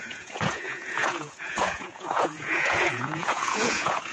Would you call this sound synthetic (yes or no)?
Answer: yes